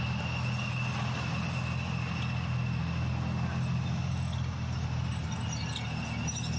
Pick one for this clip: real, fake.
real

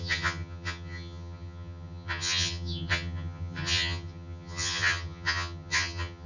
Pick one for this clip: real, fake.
fake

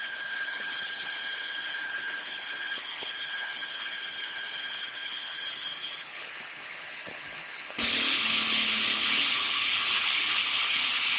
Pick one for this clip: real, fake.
fake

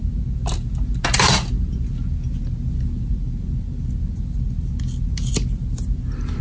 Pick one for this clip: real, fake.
real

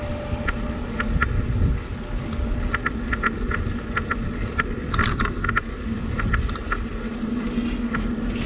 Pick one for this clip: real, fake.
real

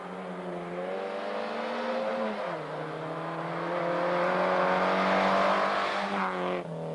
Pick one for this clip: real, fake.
real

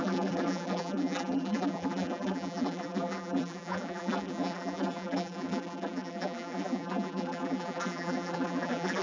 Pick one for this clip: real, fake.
fake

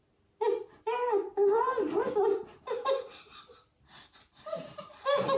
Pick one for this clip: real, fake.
real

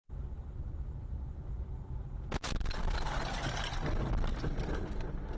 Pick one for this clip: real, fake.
real